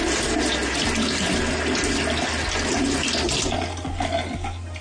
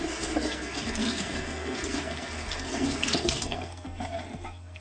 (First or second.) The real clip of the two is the first